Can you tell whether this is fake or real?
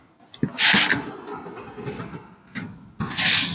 real